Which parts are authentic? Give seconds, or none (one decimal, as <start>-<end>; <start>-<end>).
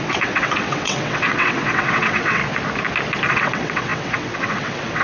2.4-3.3